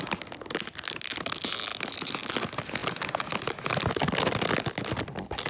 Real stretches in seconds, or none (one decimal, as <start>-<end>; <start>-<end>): 0.0-5.5